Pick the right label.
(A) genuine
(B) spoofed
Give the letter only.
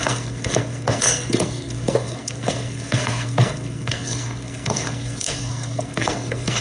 B